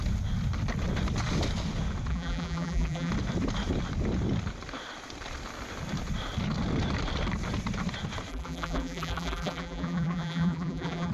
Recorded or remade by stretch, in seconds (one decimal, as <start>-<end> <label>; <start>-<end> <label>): 0.0-2.1 recorded; 2.1-3.1 remade; 3.1-8.3 recorded; 8.3-11.1 remade

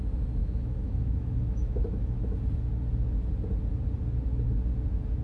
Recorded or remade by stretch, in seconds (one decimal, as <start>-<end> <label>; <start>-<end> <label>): 0.0-0.4 recorded; 0.4-2.4 remade; 2.4-5.2 recorded